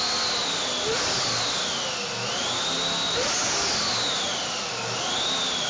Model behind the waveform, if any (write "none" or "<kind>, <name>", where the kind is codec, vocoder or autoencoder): none